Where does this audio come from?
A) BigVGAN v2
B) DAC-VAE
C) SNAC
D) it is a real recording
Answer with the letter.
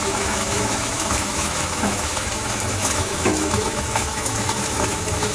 B